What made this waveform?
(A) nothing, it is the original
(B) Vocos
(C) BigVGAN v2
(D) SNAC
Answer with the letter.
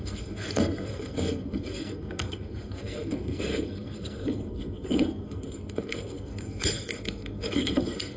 D